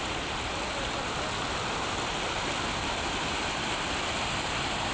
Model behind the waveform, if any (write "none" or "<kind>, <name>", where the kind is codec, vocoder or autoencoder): none